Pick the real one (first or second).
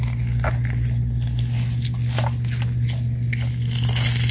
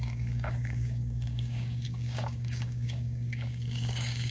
first